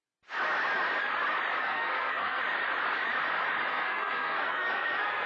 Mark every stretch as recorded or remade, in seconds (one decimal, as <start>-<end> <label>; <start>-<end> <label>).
0.0-1.6 recorded; 1.6-2.4 remade; 2.4-3.7 recorded; 3.7-5.3 remade